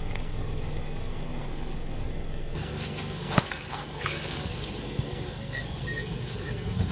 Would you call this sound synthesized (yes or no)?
yes